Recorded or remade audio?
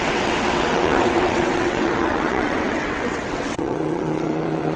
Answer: remade